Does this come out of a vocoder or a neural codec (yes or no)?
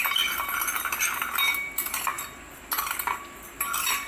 no